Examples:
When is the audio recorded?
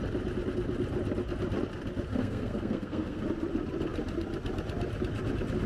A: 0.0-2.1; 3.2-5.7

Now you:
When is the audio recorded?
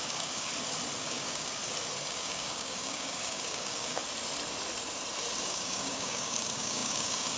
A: 0.5-1.0; 1.6-2.1; 4.0-5.4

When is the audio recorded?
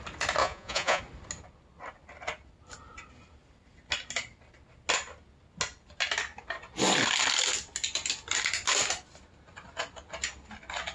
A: 0.0-0.4; 1.0-10.9